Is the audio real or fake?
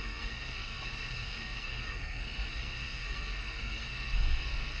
fake